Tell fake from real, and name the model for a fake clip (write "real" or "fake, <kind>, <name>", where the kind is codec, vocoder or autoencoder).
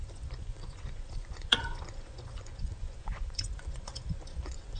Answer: fake, vocoder, Vocos